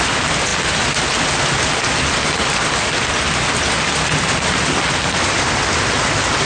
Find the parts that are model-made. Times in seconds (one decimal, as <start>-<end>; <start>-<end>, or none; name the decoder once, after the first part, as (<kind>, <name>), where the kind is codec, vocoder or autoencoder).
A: none